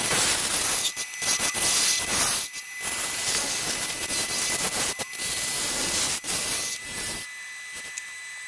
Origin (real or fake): real